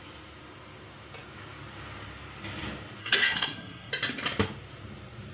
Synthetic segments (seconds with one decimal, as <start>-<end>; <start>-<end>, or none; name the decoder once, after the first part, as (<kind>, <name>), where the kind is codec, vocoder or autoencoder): 3.0-3.9 (codec, SNAC)